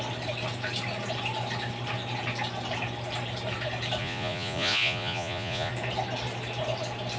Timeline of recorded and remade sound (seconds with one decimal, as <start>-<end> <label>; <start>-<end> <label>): 0.0-4.0 recorded; 4.0-5.7 remade; 5.7-7.2 recorded